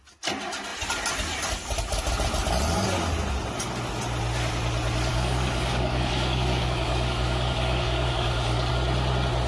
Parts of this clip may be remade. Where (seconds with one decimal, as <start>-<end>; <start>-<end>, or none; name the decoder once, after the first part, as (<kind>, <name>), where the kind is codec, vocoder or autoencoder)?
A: 5.1-8.7 (codec, DAC)